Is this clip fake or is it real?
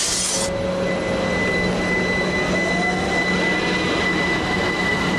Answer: real